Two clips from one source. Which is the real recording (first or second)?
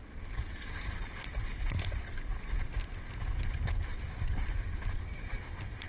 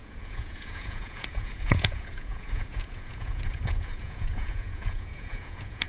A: first